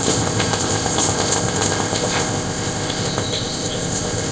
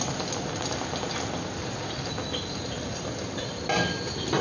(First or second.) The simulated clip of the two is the first